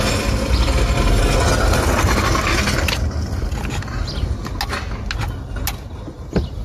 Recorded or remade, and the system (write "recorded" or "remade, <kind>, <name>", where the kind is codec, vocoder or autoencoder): recorded